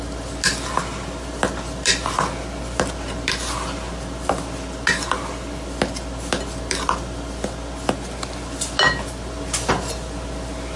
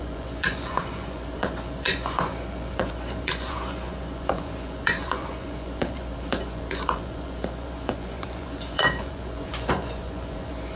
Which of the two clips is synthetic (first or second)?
second